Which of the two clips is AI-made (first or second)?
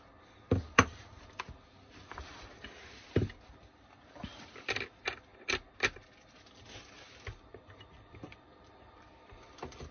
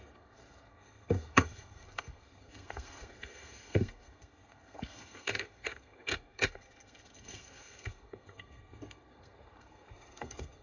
second